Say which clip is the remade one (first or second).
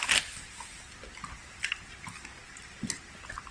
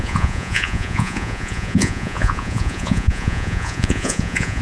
second